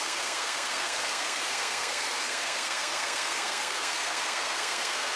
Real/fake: fake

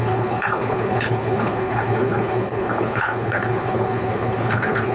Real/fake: fake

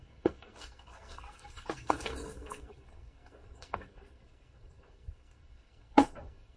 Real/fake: fake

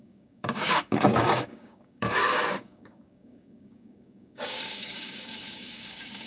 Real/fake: fake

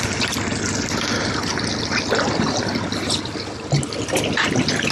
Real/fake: real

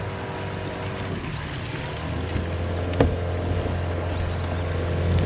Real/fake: real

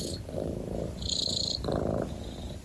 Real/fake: real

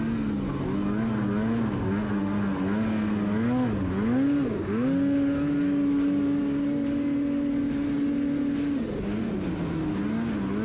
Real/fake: real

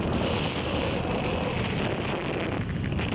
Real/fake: real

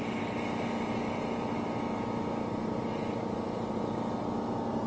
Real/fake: real